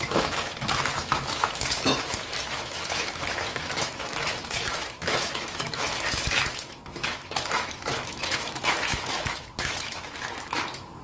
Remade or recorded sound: remade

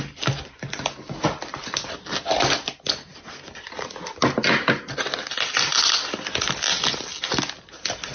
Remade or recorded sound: recorded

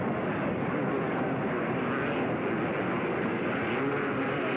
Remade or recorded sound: recorded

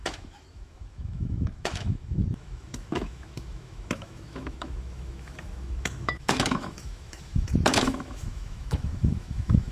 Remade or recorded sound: remade